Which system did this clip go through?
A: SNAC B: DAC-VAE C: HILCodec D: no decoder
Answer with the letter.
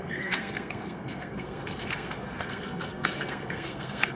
A